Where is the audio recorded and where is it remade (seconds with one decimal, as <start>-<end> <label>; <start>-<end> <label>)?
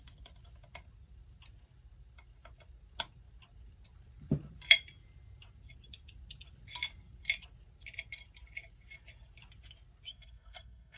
0.0-10.1 recorded; 10.1-11.0 remade